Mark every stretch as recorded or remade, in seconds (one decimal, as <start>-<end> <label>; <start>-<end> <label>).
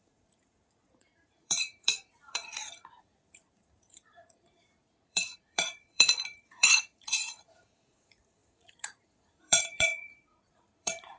0.0-11.2 remade